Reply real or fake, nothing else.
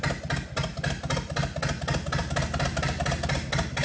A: real